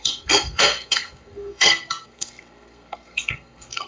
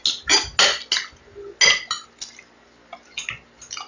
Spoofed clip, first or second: first